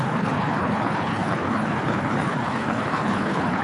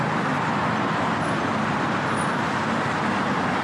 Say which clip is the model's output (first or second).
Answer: first